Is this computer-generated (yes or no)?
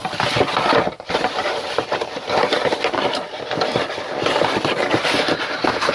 no